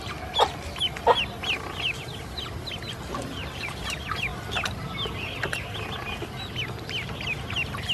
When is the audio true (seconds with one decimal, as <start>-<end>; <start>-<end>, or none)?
0.0-7.9